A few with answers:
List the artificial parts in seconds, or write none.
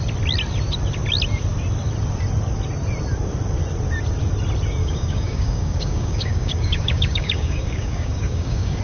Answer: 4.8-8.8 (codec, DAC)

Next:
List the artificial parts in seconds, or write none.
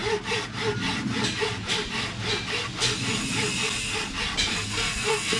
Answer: 4.5-5.4 (codec, SNAC)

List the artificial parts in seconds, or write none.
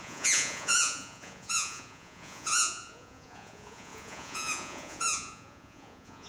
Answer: 0.0-6.3 (vocoder, Vocos)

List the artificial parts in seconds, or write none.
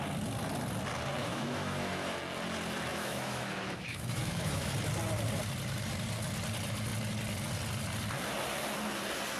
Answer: 1.2-2.2 (autoencoder, DAC-VAE); 2.9-4.7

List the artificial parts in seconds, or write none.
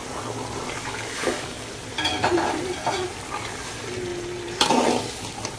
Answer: 0.8-1.7 (codec, DAC)